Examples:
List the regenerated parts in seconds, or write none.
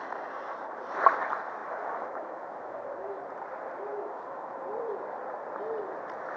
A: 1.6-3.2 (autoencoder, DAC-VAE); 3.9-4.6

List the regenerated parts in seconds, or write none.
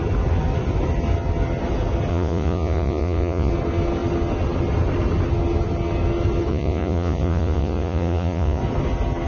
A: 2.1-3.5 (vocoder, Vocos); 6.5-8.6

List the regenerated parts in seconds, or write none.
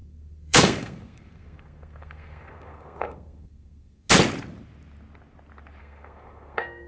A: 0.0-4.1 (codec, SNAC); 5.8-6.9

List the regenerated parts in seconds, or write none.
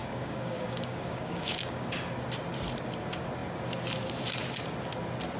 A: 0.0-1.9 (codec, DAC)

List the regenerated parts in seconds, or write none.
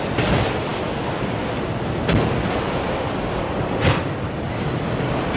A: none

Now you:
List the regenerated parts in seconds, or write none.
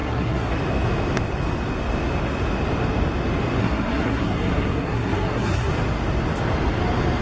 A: 0.0-0.5 (codec, SNAC); 3.6-5.7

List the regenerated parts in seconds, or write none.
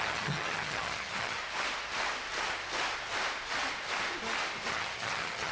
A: 0.0-1.4 (vocoder, HiFi-GAN); 4.7-5.5